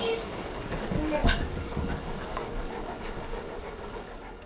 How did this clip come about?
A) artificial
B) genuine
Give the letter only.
A